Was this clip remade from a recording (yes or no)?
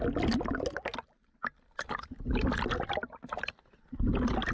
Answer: no